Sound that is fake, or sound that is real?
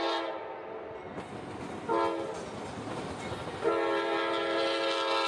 real